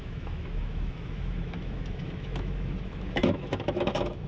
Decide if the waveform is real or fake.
fake